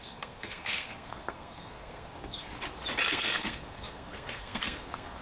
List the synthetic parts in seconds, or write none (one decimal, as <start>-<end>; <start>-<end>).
0.0-2.5; 3.1-5.2